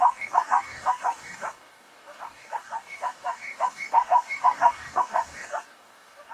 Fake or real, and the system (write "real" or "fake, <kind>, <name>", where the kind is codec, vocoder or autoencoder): fake, codec, DAC